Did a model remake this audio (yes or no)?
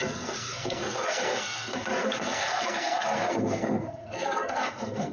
yes